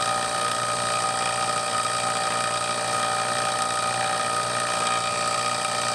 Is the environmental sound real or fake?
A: real